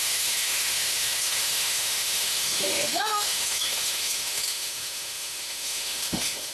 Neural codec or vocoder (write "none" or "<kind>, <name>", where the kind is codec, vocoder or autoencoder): autoencoder, DAC-VAE